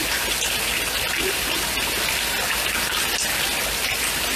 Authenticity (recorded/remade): recorded